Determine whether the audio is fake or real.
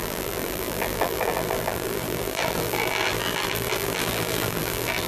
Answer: fake